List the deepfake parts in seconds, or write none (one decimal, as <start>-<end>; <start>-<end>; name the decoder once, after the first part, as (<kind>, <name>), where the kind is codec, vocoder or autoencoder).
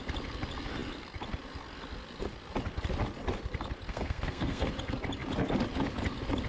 3.9-4.7 (codec, SNAC)